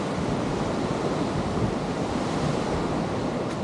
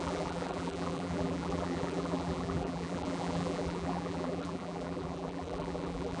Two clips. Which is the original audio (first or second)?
first